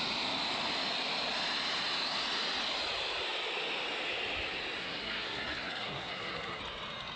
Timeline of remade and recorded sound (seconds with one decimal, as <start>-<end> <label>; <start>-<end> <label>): 0.0-4.8 recorded; 4.8-6.6 remade; 6.6-7.2 recorded

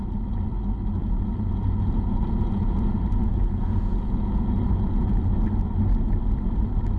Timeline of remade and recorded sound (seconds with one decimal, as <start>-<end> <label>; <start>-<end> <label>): 0.0-1.0 recorded; 1.0-5.2 remade; 5.2-7.0 recorded

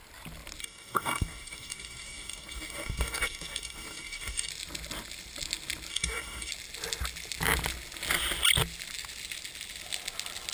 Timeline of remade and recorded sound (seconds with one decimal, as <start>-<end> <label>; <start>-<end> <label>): 0.0-0.6 recorded; 0.6-4.5 remade; 4.5-5.9 recorded; 5.9-6.5 remade; 6.5-10.5 recorded

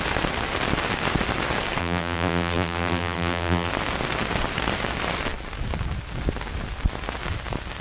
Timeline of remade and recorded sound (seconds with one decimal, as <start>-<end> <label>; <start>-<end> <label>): 0.0-1.8 recorded; 1.8-3.7 remade; 3.7-7.8 recorded

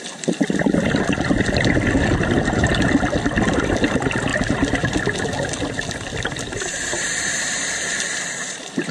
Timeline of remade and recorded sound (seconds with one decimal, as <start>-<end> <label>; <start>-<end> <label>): 0.0-0.6 remade; 0.6-2.0 recorded; 2.0-8.9 remade

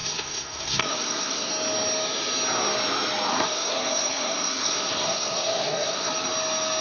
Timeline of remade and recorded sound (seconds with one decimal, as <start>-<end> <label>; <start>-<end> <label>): 0.0-1.5 remade; 1.5-3.3 recorded; 3.3-6.1 remade; 6.1-6.8 recorded

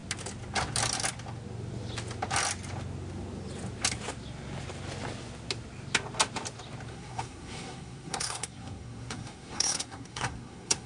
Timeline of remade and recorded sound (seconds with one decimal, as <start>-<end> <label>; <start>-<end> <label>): 0.0-6.9 recorded; 6.9-10.9 remade

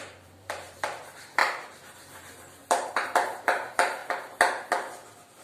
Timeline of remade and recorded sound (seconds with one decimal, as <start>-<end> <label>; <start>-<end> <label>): 0.0-1.4 remade; 1.4-1.9 recorded; 1.9-4.0 remade; 4.0-5.4 recorded